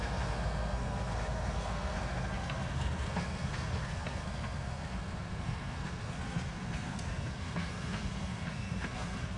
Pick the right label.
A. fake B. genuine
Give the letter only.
A